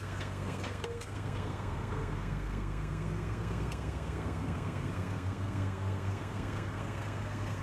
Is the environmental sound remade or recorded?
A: remade